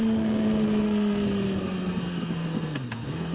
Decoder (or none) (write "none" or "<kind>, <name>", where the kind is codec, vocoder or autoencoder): codec, SNAC